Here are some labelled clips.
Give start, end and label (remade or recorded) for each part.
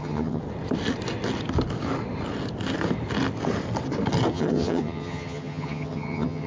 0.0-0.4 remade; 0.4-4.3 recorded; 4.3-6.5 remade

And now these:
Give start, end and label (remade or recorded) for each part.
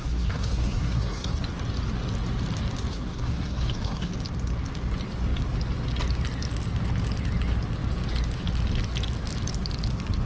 0.0-1.4 remade; 1.4-2.9 recorded; 2.9-4.1 remade; 4.1-10.3 recorded